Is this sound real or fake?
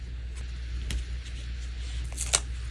real